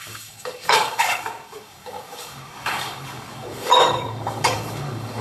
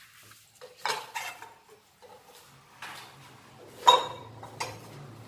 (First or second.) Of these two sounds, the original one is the second